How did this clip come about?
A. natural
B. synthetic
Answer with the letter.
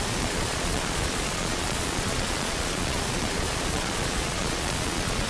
B